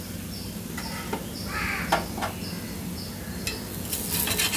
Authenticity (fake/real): real